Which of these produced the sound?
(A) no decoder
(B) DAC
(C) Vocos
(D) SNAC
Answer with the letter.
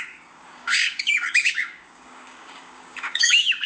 B